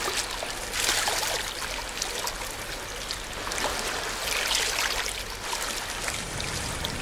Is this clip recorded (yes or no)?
yes